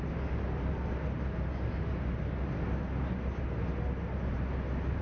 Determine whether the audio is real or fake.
real